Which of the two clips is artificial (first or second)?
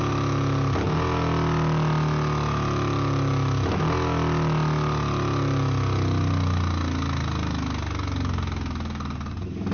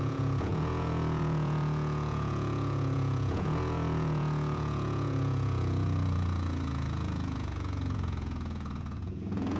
second